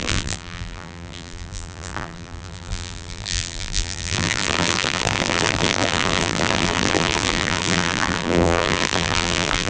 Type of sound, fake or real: fake